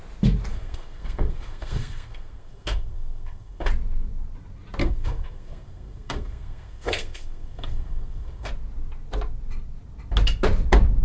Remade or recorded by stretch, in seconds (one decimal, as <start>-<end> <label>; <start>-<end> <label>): 0.0-0.5 recorded; 0.5-3.7 remade; 3.7-4.8 recorded; 4.8-8.5 remade; 8.5-11.0 recorded